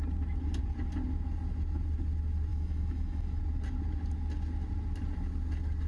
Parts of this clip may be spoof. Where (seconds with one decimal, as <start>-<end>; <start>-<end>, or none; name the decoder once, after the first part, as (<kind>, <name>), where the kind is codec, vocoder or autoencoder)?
2.5-3.4 (autoencoder, DAC-VAE)